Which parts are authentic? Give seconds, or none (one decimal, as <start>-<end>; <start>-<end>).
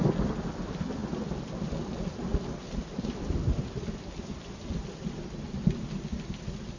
0.0-6.8